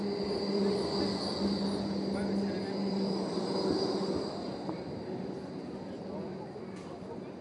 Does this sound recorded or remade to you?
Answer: recorded